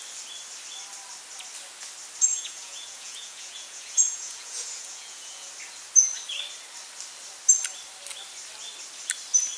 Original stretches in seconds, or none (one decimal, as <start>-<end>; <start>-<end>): 0.0-2.3; 5.5-9.6